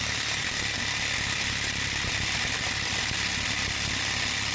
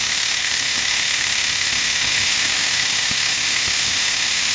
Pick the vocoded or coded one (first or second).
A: second